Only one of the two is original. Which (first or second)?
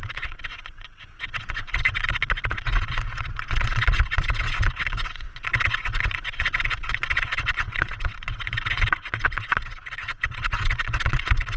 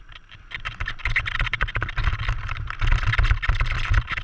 second